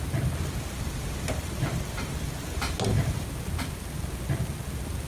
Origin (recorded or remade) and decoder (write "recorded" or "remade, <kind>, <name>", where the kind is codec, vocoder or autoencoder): recorded